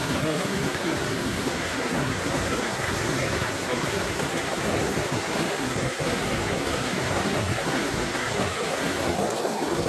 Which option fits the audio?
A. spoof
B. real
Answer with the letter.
A